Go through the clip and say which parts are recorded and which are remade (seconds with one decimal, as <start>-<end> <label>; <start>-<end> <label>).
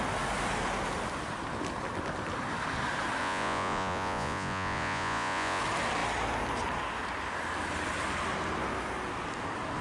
0.0-3.2 recorded; 3.2-5.6 remade; 5.6-9.8 recorded